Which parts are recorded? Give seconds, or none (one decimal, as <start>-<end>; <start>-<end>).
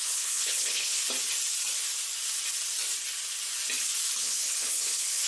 1.0-4.2